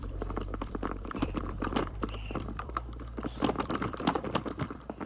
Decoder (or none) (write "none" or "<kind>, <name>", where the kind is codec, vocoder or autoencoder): vocoder, BigVGAN v2